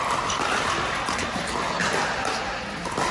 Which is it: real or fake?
real